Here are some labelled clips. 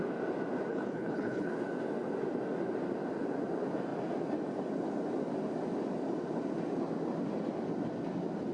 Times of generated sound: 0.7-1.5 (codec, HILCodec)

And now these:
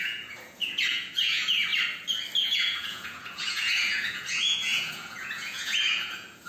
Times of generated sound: 0.0-1.7 (vocoder, Vocos); 2.4-6.5

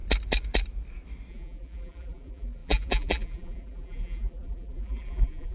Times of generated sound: 1.3-5.5 (vocoder, BigVGAN v2)

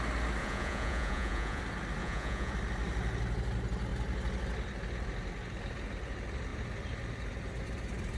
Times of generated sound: 0.4-1.6 (vocoder, Vocos); 2.0-2.5

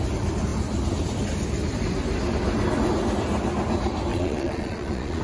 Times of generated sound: 4.1-5.2 (vocoder, Vocos)

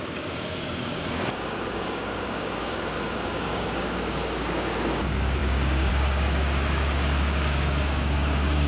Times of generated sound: 0.0-8.7 (codec, DAC)